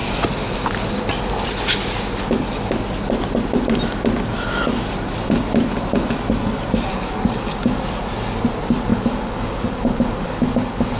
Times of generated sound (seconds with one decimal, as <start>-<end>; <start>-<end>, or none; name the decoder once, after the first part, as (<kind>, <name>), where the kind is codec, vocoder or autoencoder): 6.9-7.8 (codec, DAC); 8.9-11.0

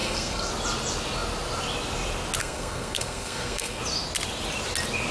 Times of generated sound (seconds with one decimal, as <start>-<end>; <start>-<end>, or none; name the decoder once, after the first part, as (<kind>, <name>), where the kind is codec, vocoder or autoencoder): 0.0-0.5 (codec, SNAC); 2.4-3.8

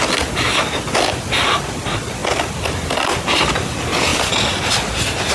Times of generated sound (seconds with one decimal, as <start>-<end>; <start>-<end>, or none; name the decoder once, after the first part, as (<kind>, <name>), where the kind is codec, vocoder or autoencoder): 0.5-1.5 (vocoder, BigVGAN v2)

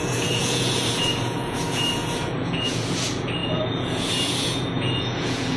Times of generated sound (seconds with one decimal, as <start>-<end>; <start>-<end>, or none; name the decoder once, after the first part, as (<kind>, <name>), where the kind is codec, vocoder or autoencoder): 0.0-5.6 (vocoder, Vocos)

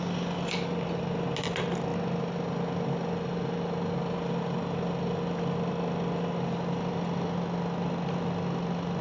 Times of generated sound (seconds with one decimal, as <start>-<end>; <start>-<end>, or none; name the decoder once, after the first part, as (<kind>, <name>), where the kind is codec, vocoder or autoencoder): none

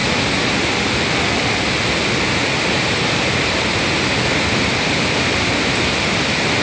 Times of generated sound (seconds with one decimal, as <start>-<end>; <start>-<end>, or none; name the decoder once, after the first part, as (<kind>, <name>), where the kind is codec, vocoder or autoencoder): 0.0-0.7 (vocoder, BigVGAN v2)